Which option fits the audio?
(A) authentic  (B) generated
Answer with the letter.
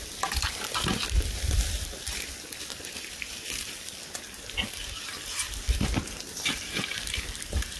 B